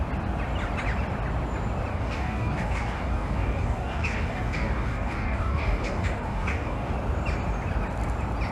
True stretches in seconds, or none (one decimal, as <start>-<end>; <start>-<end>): 0.0-1.9; 6.9-8.5